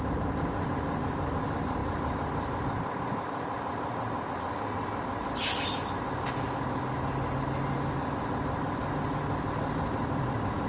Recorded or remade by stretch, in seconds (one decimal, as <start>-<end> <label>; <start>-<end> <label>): 0.0-10.7 recorded